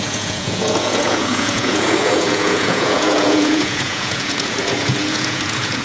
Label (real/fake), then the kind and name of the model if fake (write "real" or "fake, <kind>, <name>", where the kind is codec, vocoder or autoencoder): fake, vocoder, Vocos